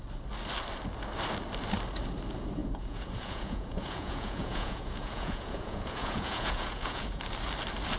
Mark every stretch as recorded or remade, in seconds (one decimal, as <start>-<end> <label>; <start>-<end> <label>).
0.0-2.6 recorded; 2.6-7.2 remade; 7.2-8.0 recorded